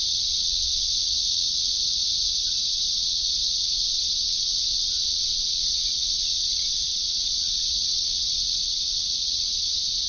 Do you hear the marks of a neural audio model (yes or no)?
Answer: yes